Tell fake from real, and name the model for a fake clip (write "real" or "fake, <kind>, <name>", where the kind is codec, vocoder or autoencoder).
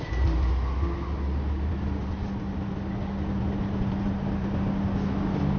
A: real